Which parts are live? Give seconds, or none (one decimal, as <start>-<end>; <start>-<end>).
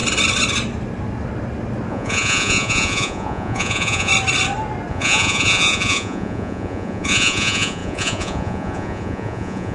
0.0-1.9; 4.1-4.9